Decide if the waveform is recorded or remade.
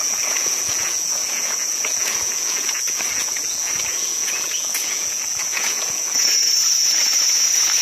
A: remade